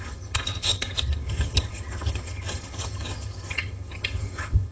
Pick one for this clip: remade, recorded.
remade